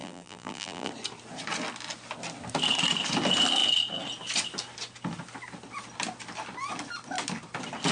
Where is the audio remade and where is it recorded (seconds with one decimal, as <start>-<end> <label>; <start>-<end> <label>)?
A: 0.0-0.9 remade; 0.9-7.9 recorded